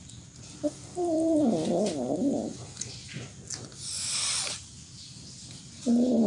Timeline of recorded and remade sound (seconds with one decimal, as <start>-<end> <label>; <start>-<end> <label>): 0.0-2.0 remade; 2.0-6.3 recorded